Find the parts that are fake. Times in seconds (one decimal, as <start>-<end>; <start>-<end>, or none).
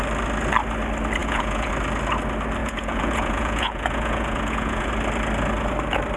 1.2-1.7; 2.6-4.9